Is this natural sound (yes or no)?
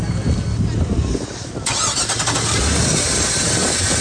yes